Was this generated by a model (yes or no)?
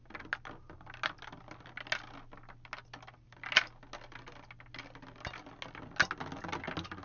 no